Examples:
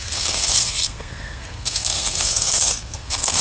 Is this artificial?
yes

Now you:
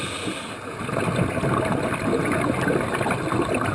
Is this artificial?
no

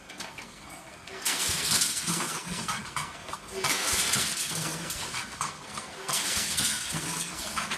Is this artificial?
yes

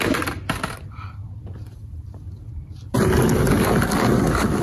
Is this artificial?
no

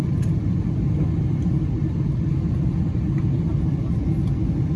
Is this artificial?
no